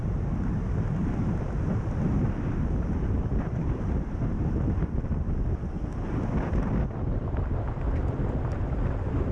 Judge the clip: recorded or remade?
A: recorded